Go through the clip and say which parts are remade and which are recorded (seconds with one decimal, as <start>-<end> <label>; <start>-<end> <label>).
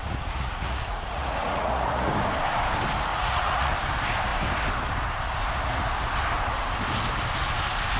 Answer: 0.0-2.1 remade; 2.1-3.1 recorded; 3.1-3.7 remade; 3.7-8.0 recorded